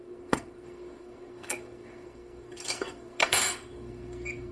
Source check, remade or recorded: remade